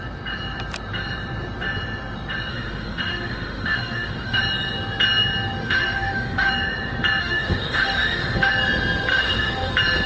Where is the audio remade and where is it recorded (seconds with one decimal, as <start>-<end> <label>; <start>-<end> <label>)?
0.0-2.5 recorded; 2.5-4.4 remade; 4.4-5.6 recorded; 5.6-6.5 remade; 6.5-7.2 recorded; 7.2-8.5 remade; 8.5-9.1 recorded; 9.1-9.7 remade; 9.7-10.1 recorded